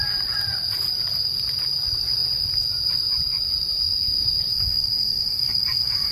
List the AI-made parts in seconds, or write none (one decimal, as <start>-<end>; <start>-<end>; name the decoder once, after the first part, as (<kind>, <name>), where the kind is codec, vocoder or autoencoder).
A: 4.5-6.1 (codec, DAC)